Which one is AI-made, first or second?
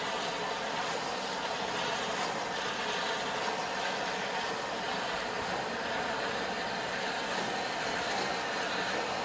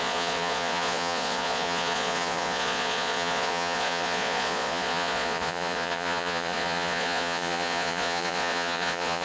second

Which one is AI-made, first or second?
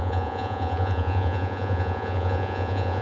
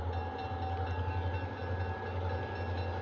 first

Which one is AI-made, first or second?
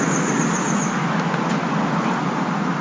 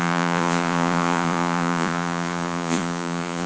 second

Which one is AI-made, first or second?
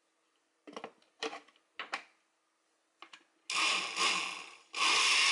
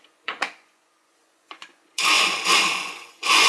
second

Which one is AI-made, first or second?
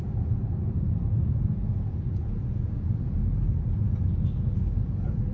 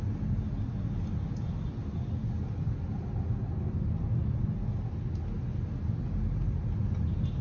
first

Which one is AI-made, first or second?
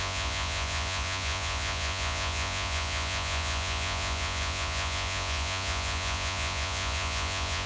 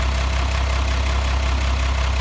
first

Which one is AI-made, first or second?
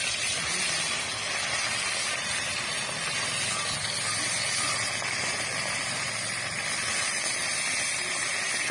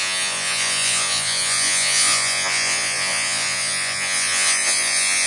second